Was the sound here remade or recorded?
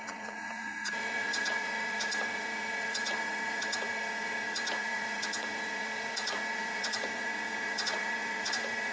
remade